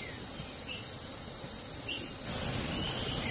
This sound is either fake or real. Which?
real